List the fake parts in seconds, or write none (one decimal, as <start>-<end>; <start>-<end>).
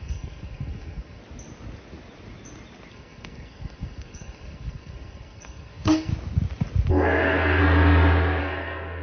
0.0-1.2; 2.9-6.1; 6.9-7.6; 8.4-9.0